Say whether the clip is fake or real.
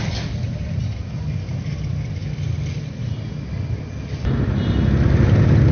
real